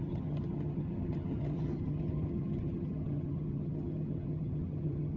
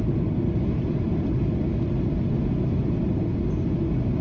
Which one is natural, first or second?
second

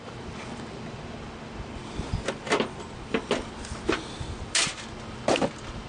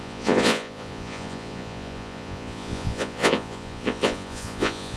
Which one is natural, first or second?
first